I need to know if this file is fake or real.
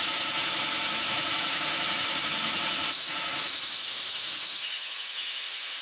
fake